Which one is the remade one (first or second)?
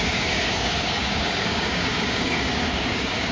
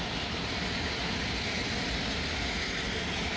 first